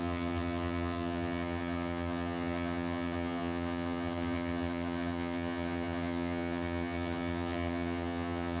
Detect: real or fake fake